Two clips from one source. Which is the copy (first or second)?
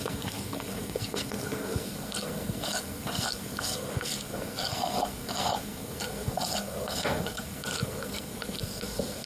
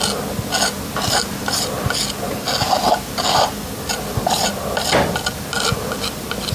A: first